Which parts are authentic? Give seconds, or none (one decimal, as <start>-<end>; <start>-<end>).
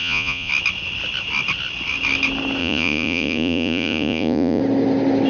0.5-2.6; 4.6-5.3